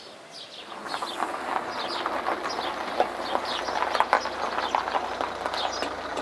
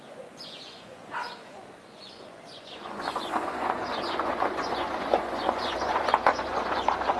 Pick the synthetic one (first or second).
second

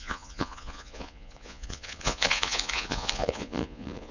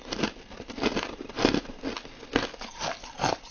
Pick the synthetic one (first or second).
first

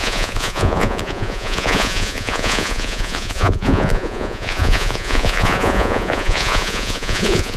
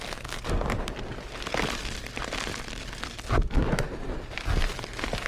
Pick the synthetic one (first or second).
first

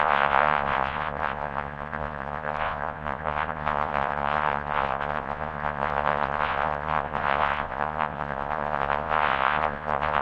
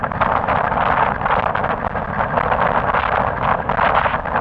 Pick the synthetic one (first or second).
first